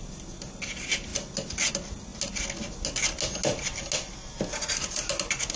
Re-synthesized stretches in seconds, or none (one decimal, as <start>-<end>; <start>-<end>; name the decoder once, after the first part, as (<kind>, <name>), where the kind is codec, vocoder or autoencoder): none